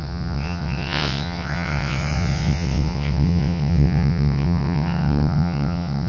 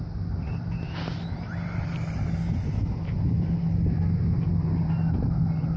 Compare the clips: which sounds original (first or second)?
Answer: second